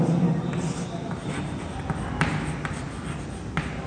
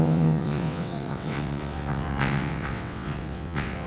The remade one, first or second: second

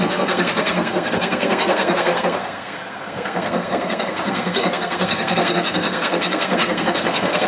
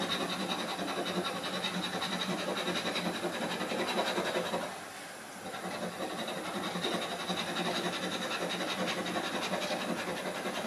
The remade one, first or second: first